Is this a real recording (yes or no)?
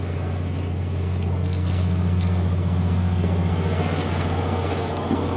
no